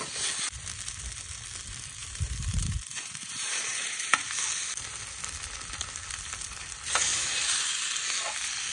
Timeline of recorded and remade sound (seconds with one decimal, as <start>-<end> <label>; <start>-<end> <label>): 0.0-2.0 recorded; 2.0-4.3 remade; 4.3-7.1 recorded; 7.1-7.7 remade; 7.7-8.7 recorded